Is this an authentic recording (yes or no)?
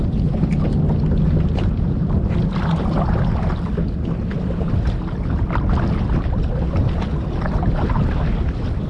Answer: yes